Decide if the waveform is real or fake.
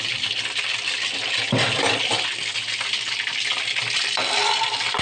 real